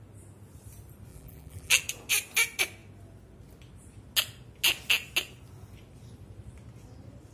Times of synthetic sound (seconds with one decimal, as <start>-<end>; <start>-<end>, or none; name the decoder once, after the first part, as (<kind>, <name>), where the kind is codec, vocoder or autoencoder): 1.1-1.8 (vocoder, BigVGAN v2)